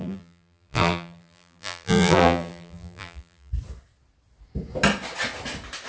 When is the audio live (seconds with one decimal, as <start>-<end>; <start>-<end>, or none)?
3.5-5.9

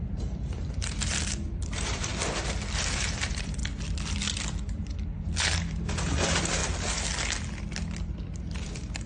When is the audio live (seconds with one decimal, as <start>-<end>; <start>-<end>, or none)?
2.1-2.9; 3.6-4.6; 6.6-8.4

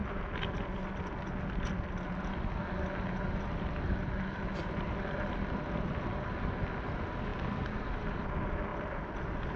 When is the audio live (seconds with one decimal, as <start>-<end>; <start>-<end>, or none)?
0.0-8.7

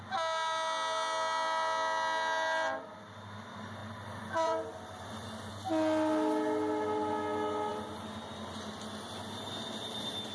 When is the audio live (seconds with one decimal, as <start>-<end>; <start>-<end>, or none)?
0.0-3.8; 5.5-10.3

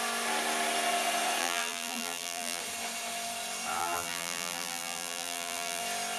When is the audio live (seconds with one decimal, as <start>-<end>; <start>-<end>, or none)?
0.0-1.4; 2.6-3.8; 5.8-6.2

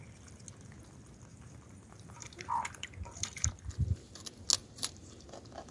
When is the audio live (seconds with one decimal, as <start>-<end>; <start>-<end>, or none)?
0.0-1.3; 3.5-4.6; 5.3-5.7